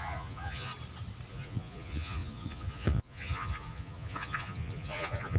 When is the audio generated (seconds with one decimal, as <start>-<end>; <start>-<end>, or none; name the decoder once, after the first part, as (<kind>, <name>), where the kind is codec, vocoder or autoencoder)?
0.0-0.7 (vocoder, Vocos); 1.3-5.4